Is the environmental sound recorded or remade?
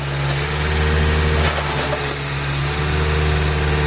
recorded